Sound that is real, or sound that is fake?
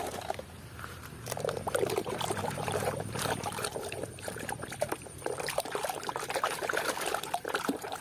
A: fake